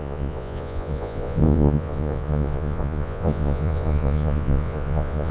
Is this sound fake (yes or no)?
yes